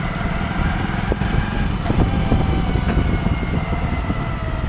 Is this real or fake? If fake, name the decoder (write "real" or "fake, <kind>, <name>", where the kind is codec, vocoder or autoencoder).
real